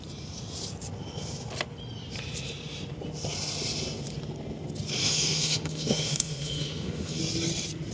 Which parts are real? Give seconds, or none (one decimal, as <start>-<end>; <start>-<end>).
0.0-5.0; 7.2-7.9